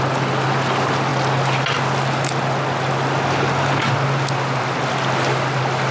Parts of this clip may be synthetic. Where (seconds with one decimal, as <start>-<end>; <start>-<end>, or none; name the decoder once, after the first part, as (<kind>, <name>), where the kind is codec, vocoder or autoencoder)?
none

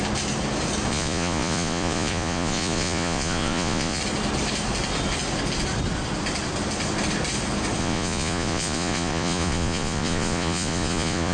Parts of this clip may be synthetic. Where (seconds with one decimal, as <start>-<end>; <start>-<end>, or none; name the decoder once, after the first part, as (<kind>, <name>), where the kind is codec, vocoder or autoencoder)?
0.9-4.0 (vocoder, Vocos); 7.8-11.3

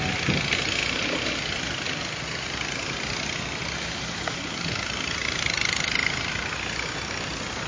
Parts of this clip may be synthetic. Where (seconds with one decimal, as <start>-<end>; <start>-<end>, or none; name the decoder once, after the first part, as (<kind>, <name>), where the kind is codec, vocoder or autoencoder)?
none

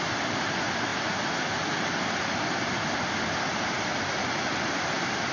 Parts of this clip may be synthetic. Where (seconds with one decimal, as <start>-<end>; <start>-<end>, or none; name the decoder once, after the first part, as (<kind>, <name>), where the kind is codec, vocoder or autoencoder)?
none

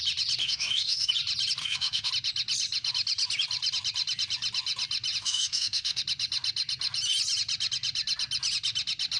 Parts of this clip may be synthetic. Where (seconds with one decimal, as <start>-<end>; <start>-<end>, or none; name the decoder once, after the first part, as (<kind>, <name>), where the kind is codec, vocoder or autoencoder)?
0.4-1.1 (autoencoder, DAC-VAE); 1.6-2.1; 5.2-6.0

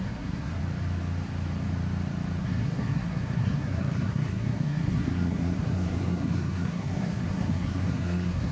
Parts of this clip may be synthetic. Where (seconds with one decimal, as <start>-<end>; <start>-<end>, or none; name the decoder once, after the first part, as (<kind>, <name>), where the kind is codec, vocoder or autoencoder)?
0.0-0.6 (codec, SNAC); 2.4-8.5

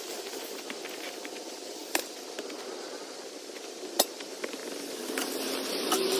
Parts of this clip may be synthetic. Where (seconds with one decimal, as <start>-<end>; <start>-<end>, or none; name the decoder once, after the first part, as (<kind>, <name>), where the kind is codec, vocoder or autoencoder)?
0.0-1.8 (vocoder, BigVGAN v2); 3.8-4.6; 5.7-6.2

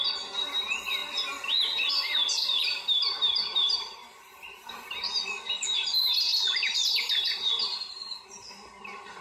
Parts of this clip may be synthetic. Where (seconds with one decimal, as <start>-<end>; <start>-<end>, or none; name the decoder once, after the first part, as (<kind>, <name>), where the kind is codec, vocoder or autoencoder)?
2.6-5.0 (vocoder, BigVGAN v2)